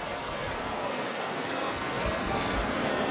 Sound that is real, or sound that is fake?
fake